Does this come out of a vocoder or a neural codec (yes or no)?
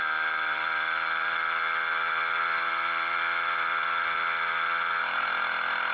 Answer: no